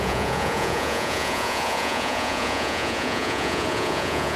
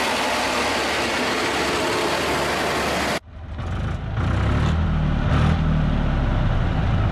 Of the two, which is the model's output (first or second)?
first